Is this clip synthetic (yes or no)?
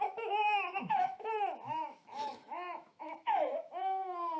yes